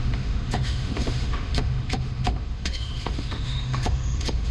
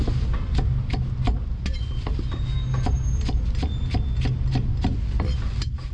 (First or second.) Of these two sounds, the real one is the second